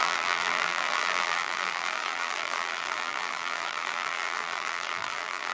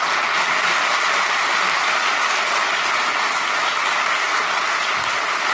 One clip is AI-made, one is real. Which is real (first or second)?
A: second